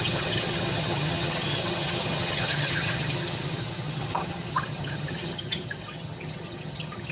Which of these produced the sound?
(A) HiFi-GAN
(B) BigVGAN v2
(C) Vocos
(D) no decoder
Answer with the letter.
A